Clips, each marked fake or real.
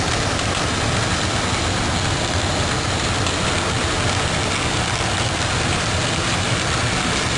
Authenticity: real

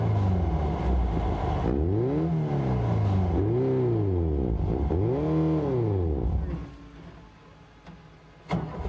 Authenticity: real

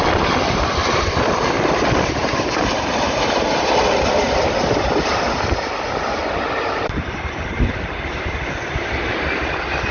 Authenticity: fake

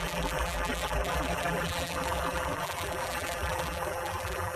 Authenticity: fake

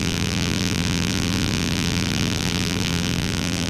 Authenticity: fake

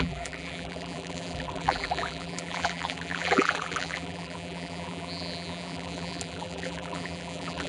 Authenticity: fake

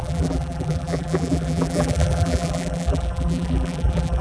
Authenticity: fake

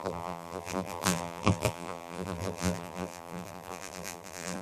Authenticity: fake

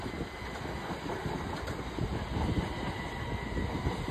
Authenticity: real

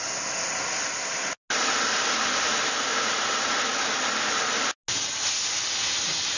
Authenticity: real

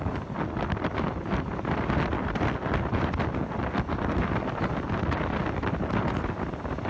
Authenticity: real